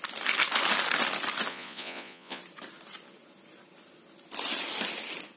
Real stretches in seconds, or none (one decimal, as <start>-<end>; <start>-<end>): 0.0-1.5; 2.4-5.4